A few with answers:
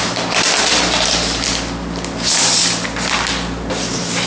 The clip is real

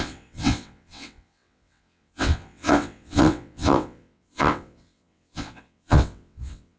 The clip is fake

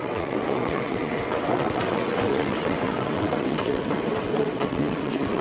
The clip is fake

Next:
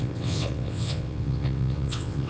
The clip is fake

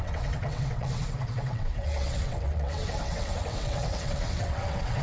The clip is fake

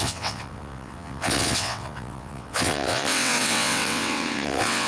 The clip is fake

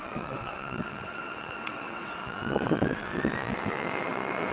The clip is fake